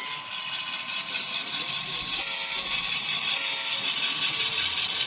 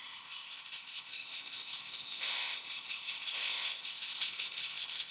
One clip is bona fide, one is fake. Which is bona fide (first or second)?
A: first